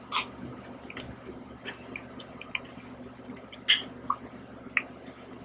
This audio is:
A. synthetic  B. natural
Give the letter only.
B